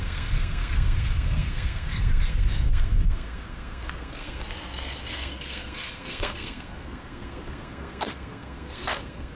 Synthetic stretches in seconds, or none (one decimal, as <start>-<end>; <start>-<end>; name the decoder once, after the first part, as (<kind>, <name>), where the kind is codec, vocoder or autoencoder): 0.0-4.4 (codec, SNAC); 5.1-9.4